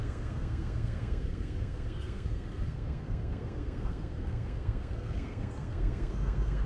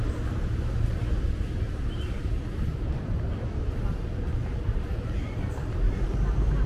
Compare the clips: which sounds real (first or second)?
second